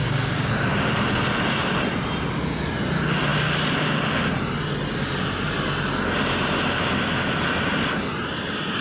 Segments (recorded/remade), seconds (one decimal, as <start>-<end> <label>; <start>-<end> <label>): 0.0-0.5 remade; 0.5-8.8 recorded